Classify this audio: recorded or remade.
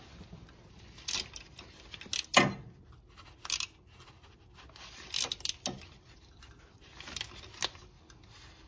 recorded